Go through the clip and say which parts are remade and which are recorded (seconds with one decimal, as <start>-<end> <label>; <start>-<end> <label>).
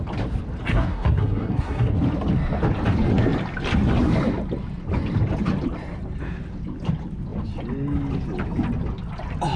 0.0-0.7 recorded; 0.7-1.9 remade; 1.9-9.6 recorded